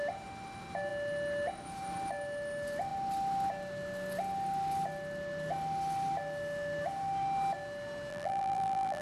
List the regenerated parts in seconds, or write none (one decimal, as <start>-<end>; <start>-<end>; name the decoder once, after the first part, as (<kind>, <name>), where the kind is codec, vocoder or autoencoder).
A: 8.1-9.0 (vocoder, BigVGAN v2)